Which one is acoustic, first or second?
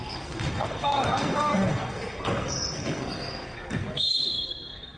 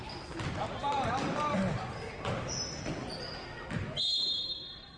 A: second